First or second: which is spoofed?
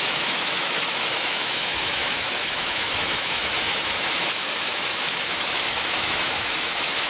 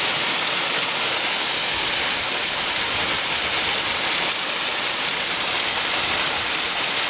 first